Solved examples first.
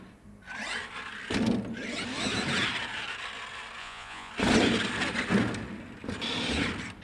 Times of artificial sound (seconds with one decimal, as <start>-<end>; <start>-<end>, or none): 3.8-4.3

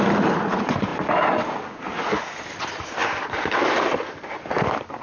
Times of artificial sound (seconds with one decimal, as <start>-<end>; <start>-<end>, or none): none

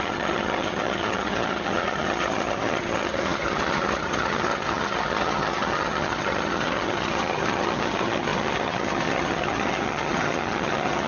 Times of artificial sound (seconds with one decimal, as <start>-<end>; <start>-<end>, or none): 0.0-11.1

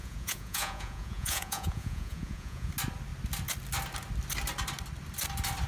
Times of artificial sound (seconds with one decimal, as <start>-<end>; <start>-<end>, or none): 0.0-2.7